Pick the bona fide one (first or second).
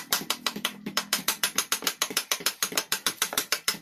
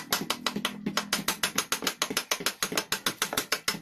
second